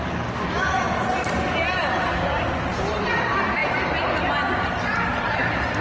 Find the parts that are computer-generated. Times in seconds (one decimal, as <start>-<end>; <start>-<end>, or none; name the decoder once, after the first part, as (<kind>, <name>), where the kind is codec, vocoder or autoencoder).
none